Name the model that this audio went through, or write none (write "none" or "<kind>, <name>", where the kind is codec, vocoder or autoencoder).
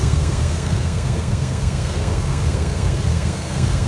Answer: codec, SNAC